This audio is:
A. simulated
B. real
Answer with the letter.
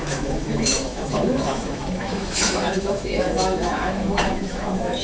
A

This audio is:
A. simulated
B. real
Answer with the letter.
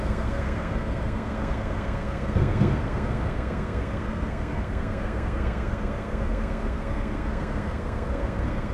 A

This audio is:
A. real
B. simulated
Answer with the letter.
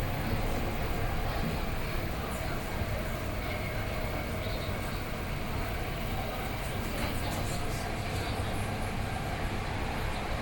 A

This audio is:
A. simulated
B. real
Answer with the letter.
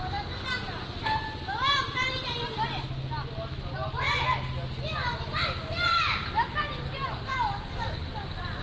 B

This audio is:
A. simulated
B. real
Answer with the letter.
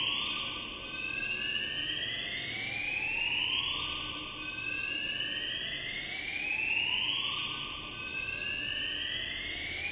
B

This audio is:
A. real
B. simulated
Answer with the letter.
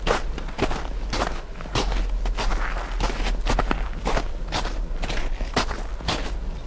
A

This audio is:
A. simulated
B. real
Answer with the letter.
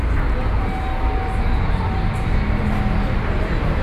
B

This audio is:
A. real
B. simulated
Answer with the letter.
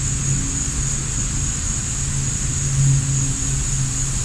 A